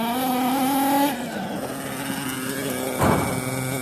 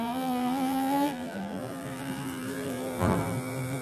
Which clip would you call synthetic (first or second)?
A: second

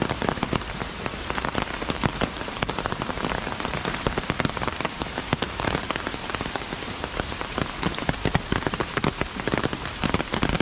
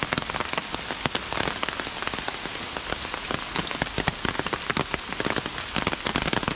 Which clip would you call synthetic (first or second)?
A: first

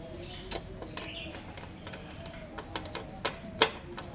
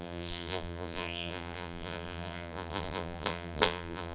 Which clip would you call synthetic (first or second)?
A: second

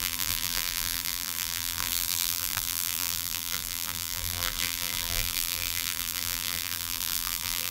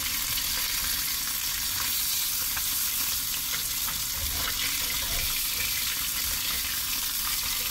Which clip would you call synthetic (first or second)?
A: first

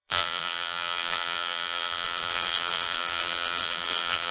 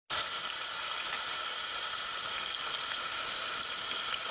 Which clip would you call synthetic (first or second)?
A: first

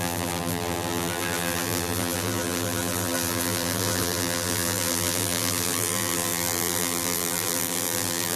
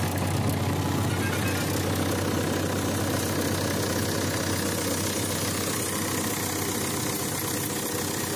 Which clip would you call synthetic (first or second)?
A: first